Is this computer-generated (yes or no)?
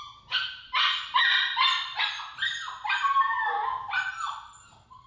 no